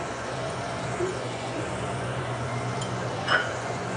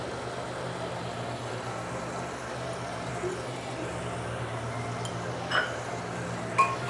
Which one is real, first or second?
second